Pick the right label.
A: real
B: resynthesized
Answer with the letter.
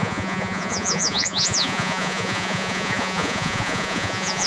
B